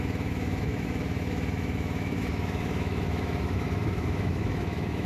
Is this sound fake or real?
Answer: fake